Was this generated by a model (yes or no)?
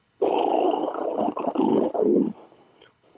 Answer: yes